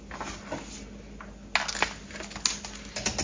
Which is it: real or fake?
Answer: real